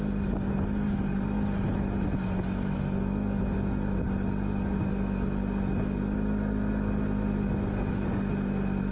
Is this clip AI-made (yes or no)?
no